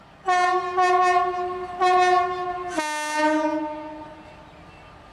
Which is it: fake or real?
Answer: real